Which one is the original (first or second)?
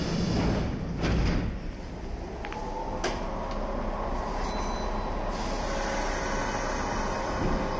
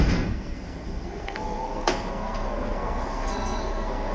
first